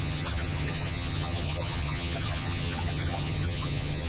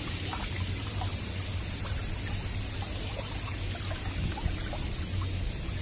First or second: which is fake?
first